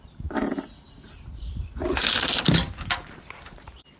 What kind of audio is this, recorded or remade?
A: recorded